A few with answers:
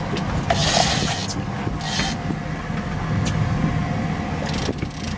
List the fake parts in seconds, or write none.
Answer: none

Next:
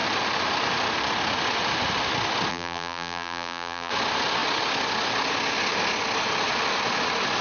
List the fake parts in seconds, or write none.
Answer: 2.5-3.9

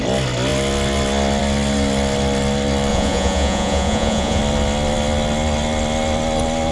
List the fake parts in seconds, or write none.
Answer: 2.9-4.4